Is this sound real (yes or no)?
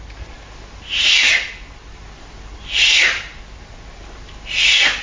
yes